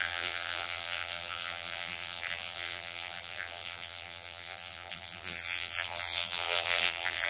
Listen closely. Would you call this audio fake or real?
fake